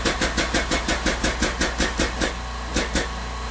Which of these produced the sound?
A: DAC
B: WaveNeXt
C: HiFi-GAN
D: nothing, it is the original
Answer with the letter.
D